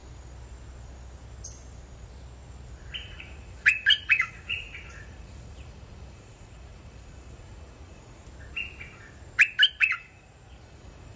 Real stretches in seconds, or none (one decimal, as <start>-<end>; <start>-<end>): 0.0-3.0; 8.2-9.8